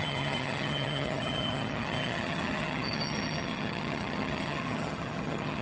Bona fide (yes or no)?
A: no